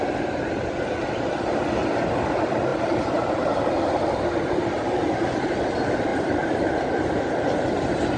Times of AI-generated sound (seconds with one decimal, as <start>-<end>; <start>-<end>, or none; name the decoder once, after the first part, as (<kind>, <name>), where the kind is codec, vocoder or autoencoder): 6.1-6.7 (vocoder, BigVGAN v2)